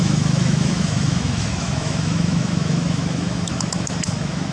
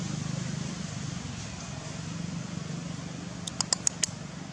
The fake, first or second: first